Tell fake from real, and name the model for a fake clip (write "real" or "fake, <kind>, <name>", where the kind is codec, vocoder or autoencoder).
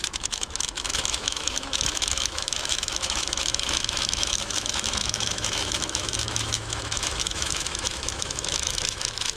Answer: fake, autoencoder, DAC-VAE